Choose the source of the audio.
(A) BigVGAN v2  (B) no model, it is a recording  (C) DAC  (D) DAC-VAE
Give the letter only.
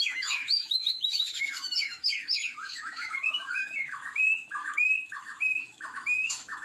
D